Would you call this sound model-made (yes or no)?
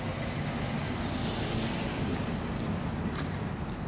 no